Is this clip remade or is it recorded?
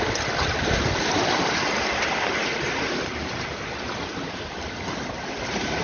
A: recorded